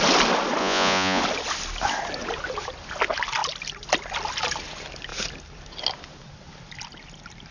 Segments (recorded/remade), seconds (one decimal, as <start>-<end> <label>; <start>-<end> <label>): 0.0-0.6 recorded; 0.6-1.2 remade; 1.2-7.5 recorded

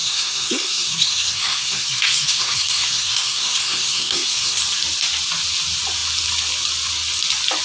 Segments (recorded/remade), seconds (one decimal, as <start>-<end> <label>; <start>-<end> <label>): 0.0-4.6 remade; 4.6-7.6 recorded

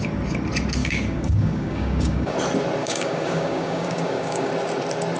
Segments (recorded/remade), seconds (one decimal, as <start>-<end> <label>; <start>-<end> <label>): 0.0-0.8 recorded; 0.8-2.3 remade; 2.3-2.8 recorded; 2.8-4.5 remade; 4.5-5.2 recorded

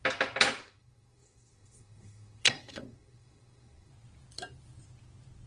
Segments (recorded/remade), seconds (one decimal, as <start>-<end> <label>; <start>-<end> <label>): 0.0-0.6 recorded; 0.6-3.9 remade; 3.9-5.5 recorded